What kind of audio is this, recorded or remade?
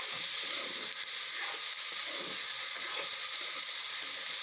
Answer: recorded